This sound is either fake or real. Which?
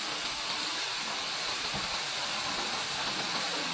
real